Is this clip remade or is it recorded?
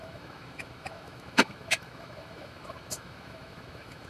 remade